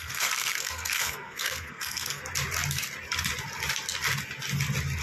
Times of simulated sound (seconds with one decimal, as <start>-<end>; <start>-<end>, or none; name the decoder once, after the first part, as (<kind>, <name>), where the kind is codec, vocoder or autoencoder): 0.0-2.2 (codec, SNAC)